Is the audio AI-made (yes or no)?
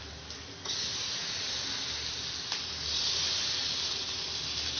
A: no